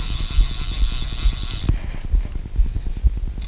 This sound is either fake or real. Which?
real